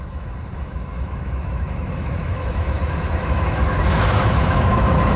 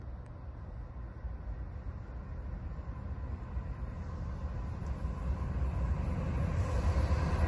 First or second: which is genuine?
second